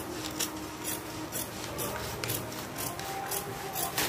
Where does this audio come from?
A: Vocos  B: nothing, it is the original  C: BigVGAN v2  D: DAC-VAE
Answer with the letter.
B